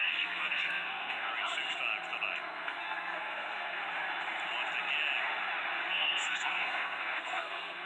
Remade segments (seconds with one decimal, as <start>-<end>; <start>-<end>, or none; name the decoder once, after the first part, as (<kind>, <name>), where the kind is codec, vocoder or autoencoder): 0.0-1.3 (codec, SNAC); 2.4-3.8; 5.9-7.9